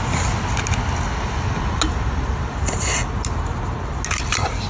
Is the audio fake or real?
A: real